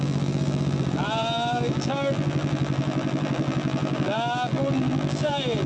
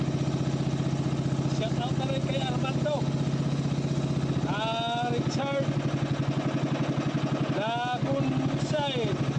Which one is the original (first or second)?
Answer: second